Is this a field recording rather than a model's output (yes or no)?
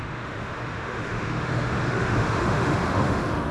no